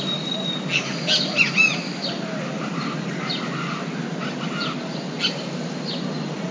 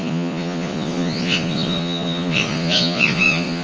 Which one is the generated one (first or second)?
second